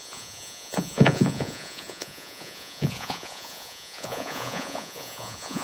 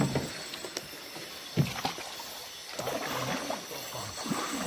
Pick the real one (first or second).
second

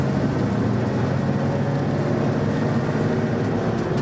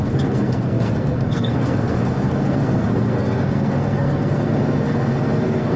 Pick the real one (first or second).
first